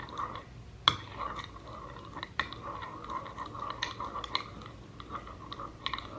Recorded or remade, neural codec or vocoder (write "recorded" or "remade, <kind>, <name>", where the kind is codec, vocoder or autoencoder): recorded